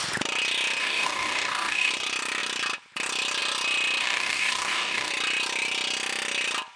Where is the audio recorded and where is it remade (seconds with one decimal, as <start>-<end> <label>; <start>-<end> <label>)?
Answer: 0.0-0.8 recorded; 0.8-1.9 remade; 1.9-4.0 recorded; 4.0-5.1 remade; 5.1-6.8 recorded